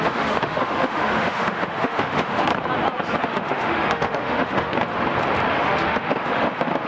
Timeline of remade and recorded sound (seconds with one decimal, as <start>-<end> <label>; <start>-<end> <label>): 0.0-2.5 remade; 2.5-3.2 recorded; 3.2-4.7 remade; 4.7-5.5 recorded; 5.5-6.9 remade